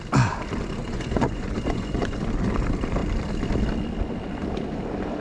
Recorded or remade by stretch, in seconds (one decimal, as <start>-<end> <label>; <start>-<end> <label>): 0.0-0.8 recorded; 0.8-2.2 remade; 2.2-5.2 recorded